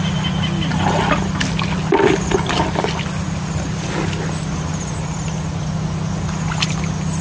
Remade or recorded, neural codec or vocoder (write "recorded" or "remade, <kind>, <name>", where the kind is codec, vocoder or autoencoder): recorded